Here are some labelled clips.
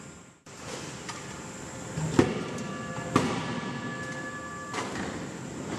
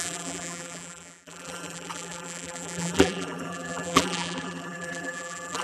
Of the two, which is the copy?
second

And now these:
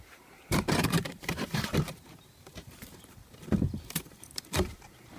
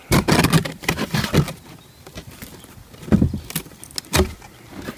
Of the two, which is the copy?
first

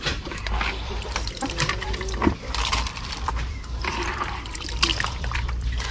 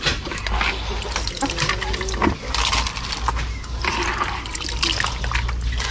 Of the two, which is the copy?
first